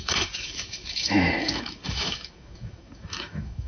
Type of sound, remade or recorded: remade